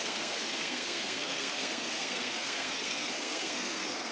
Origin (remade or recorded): remade